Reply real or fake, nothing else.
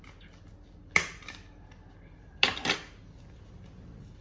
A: real